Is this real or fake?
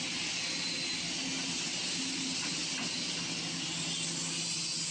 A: real